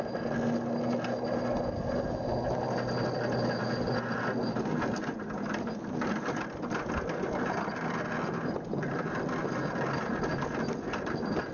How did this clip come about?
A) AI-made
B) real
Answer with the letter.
B